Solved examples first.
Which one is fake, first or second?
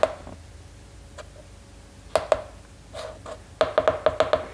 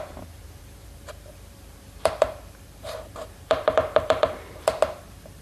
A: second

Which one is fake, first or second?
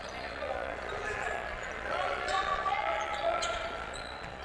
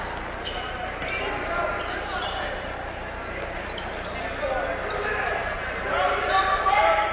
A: first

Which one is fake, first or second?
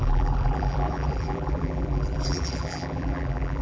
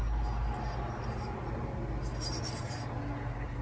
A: first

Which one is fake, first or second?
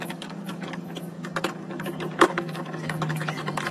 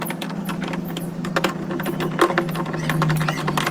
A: first